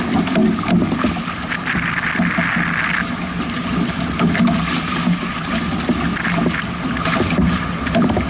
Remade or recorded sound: recorded